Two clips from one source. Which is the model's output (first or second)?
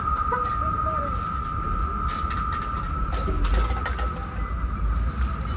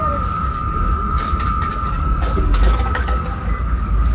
second